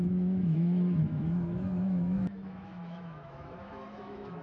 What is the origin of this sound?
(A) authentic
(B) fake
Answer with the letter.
B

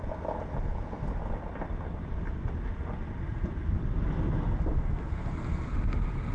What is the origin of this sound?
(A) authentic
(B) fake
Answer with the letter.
A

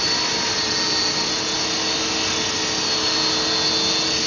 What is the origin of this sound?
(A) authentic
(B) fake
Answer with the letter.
A